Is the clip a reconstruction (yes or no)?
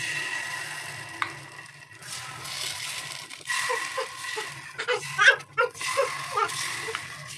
no